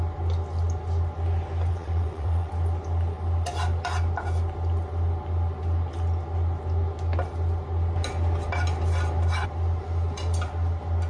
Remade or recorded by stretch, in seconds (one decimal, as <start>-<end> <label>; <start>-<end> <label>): 0.0-1.7 recorded; 1.7-2.5 remade; 2.5-11.1 recorded